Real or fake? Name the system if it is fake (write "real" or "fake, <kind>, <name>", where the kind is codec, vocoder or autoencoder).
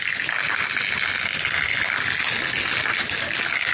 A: real